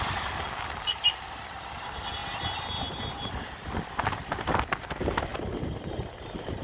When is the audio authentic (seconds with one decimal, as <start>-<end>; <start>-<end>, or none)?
0.0-6.6